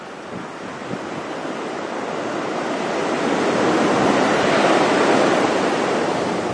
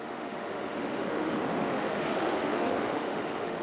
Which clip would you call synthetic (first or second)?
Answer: second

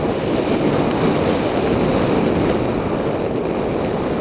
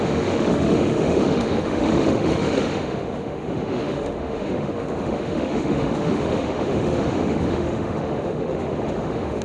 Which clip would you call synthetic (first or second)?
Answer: second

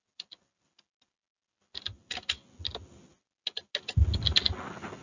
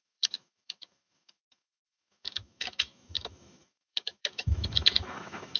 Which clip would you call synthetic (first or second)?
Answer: second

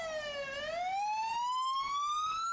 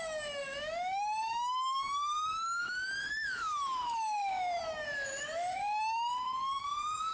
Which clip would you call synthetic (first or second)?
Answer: second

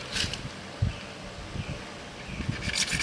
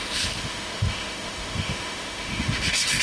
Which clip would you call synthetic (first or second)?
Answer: second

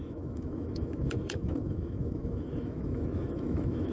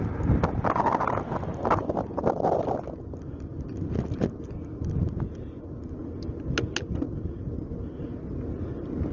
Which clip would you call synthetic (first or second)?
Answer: first